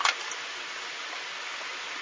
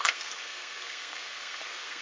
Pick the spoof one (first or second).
second